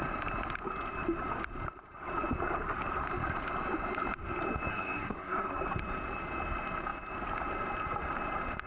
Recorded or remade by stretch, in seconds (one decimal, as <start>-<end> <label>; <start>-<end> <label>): 0.0-4.7 recorded; 4.7-5.6 remade; 5.6-8.7 recorded